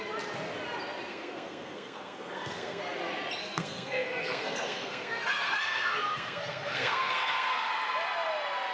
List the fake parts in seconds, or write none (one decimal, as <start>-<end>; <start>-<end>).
1.1-2.8; 3.4-7.7